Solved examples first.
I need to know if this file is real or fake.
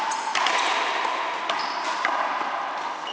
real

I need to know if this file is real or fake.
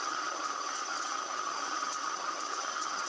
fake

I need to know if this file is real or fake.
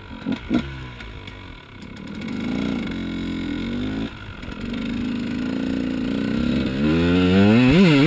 real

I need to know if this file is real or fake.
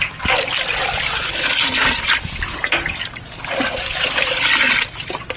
real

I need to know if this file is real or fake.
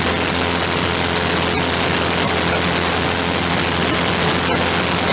real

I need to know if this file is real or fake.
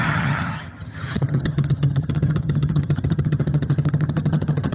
fake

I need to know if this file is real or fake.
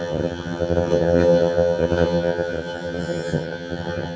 fake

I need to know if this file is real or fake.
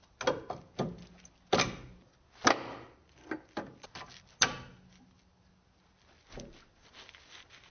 real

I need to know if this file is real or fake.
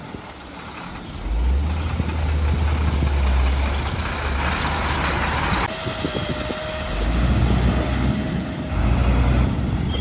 real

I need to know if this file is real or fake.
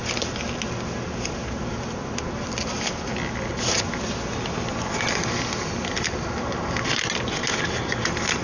real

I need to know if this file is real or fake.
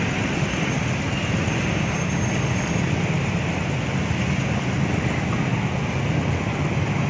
real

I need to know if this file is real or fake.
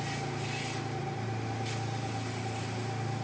real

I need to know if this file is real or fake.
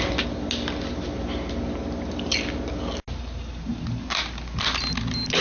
real